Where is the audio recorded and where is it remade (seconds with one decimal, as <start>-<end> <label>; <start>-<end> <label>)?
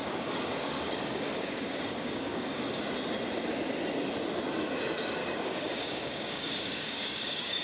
0.0-2.8 remade; 2.8-5.2 recorded; 5.2-7.6 remade